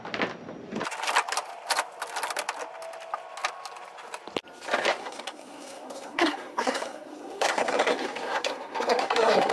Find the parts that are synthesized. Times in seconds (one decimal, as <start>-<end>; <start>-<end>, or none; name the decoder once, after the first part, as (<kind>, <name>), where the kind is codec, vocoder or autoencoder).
5.0-9.5 (codec, SNAC)